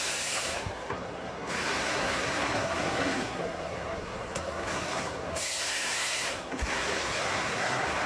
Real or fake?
fake